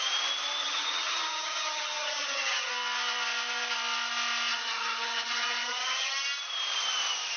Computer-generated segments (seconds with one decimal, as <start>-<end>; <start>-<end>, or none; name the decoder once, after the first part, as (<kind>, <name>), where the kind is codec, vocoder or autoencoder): 0.6-2.7 (vocoder, HiFi-GAN); 4.5-6.1